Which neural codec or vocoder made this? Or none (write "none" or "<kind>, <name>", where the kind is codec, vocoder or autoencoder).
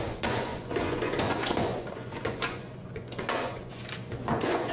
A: vocoder, Vocos